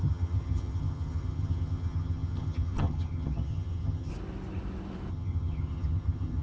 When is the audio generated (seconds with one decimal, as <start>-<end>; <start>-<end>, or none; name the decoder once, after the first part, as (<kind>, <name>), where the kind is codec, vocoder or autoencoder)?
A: 0.0-4.1 (vocoder, HiFi-GAN); 5.1-6.4